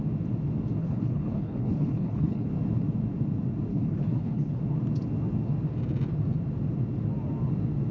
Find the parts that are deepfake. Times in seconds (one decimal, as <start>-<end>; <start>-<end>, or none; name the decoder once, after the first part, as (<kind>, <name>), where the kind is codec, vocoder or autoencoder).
0.8-2.5 (codec, HILCodec); 3.7-4.6